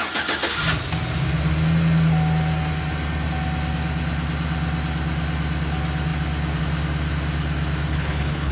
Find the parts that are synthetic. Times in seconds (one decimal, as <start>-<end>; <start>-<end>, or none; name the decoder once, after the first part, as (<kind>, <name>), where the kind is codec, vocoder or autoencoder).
7.9-8.5 (codec, HILCodec)